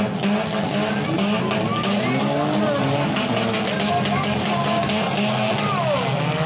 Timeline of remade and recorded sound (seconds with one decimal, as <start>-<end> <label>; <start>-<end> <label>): 0.0-6.5 recorded